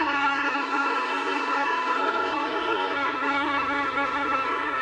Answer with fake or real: fake